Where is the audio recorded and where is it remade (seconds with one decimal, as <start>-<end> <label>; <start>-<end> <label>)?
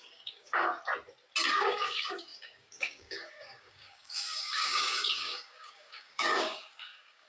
0.0-0.7 remade; 0.7-1.5 recorded; 1.5-7.3 remade